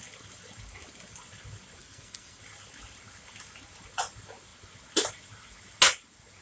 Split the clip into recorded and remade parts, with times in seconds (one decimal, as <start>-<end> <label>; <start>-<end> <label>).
0.0-1.8 recorded; 1.8-2.4 remade; 2.4-6.4 recorded